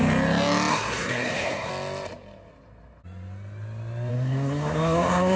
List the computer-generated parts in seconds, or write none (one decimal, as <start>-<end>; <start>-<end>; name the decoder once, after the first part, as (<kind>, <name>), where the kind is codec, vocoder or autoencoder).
0.7-1.7 (codec, SNAC); 4.1-5.4